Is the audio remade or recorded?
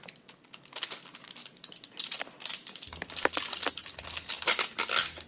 recorded